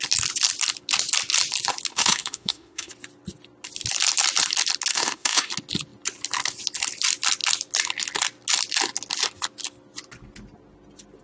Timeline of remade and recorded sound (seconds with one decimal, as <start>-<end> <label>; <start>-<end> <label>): 0.0-1.9 recorded; 1.9-2.9 remade; 2.9-4.9 recorded; 4.9-5.5 remade; 5.5-11.2 recorded